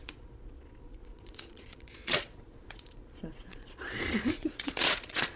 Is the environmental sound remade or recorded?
remade